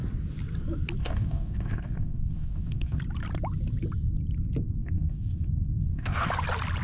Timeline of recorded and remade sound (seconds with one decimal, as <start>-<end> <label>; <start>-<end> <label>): 0.0-1.0 recorded; 1.0-3.0 remade; 3.0-4.8 recorded; 4.8-6.3 remade; 6.3-6.8 recorded